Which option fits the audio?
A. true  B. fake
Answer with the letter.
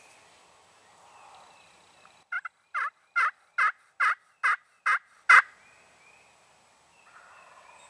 A